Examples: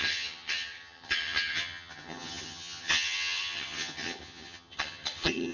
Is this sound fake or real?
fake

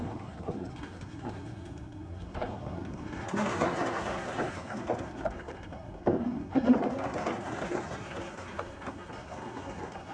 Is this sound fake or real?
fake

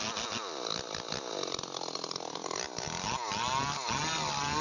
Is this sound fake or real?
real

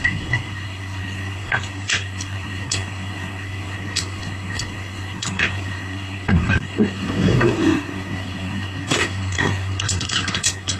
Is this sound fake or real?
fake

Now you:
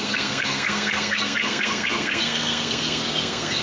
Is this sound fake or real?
fake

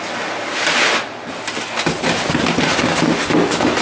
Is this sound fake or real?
real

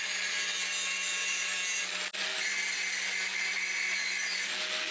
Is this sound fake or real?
real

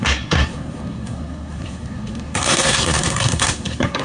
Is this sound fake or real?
fake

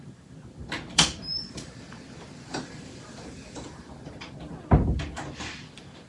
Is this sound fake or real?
fake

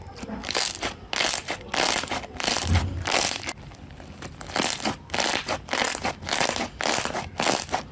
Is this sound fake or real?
real